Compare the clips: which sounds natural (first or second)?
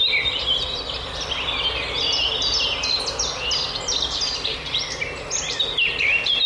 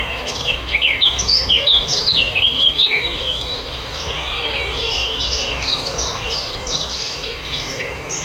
first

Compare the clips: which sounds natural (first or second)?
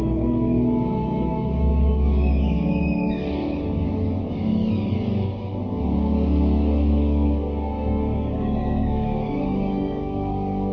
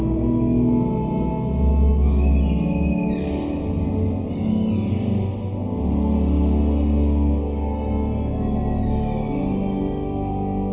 second